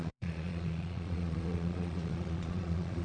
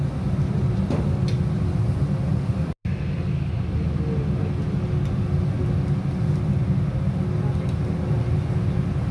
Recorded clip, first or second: second